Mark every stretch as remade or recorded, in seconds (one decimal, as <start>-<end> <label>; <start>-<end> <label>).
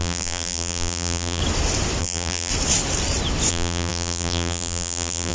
0.0-1.4 remade; 1.4-2.0 recorded; 2.0-2.5 remade; 2.5-3.5 recorded; 3.5-5.3 remade